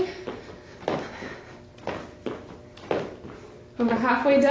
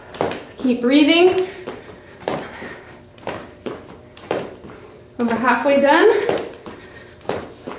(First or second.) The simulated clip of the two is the second